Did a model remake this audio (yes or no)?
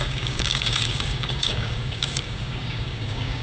yes